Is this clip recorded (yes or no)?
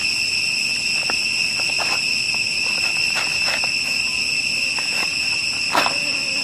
yes